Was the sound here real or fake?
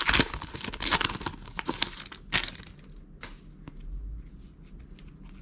real